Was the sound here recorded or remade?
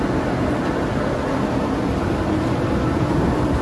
recorded